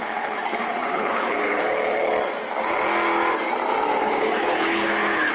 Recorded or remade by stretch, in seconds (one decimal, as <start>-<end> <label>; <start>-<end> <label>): 0.0-2.1 remade; 2.1-4.0 recorded; 4.0-5.3 remade